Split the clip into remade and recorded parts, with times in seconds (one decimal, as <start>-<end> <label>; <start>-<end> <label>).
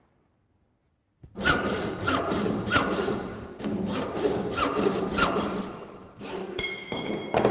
0.0-3.3 recorded; 3.3-4.0 remade; 4.0-6.4 recorded; 6.4-7.1 remade; 7.1-7.5 recorded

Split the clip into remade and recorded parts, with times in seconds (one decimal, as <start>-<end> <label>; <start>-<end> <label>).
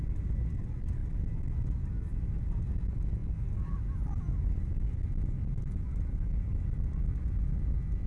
0.0-8.1 recorded